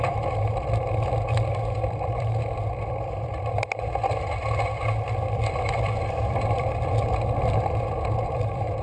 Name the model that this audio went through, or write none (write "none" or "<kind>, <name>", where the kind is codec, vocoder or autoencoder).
vocoder, BigVGAN v2